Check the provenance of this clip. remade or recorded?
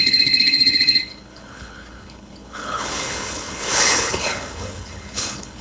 remade